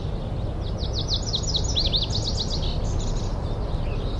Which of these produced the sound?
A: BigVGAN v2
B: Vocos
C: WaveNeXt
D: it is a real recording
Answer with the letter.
D